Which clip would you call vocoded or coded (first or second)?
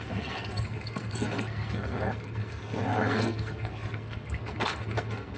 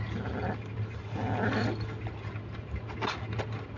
first